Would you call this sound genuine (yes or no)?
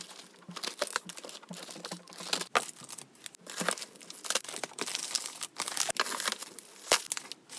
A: yes